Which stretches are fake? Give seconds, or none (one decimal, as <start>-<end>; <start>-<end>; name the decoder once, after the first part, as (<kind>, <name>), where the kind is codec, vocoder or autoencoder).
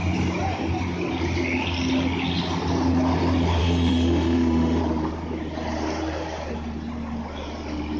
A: 3.6-4.8 (autoencoder, DAC-VAE)